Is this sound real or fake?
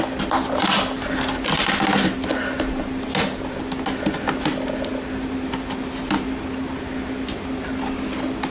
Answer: real